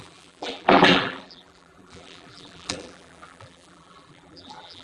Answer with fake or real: fake